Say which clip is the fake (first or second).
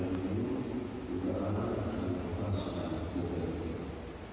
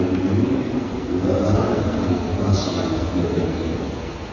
second